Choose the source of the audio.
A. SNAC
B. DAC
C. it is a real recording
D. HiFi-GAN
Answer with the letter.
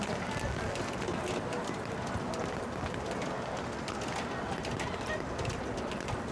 C